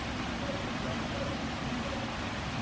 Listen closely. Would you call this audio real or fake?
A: real